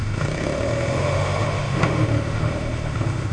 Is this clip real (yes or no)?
no